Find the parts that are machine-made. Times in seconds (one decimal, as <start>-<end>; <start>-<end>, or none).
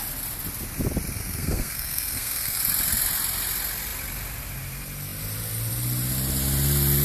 1.2-2.6